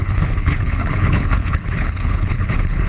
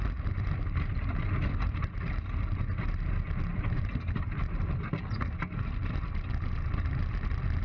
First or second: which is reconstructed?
first